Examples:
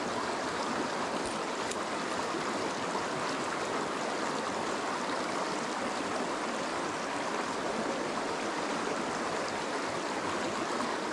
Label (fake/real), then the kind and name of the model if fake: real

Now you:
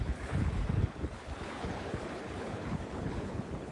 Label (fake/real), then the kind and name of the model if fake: fake, codec, HILCodec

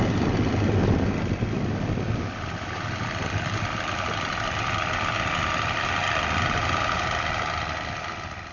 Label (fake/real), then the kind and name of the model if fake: real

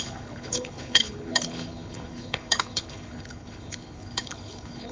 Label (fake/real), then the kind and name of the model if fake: fake, codec, HILCodec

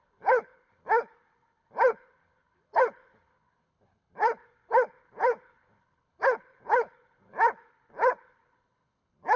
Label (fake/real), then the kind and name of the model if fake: fake, codec, HILCodec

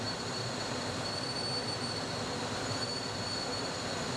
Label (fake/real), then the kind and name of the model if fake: real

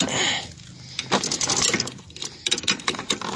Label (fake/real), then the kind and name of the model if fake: real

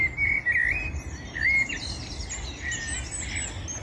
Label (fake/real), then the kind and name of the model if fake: real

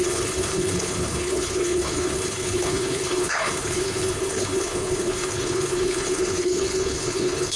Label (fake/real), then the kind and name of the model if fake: fake, codec, HILCodec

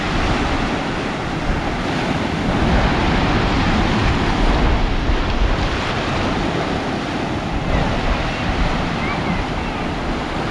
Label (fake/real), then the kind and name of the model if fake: real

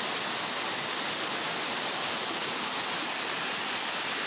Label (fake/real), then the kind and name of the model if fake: real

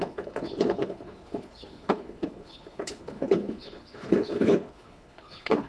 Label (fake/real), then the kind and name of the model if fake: fake, codec, HILCodec